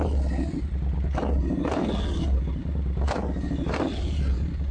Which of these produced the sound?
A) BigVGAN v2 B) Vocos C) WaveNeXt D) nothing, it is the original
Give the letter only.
D